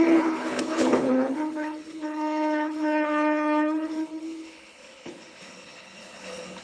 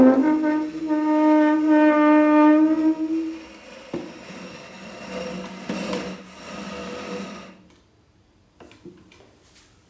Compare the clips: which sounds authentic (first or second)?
second